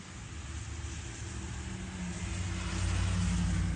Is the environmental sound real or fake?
real